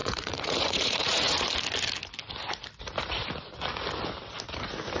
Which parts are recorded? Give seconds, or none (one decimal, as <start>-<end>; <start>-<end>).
1.5-5.0